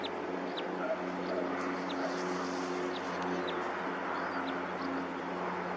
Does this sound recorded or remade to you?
recorded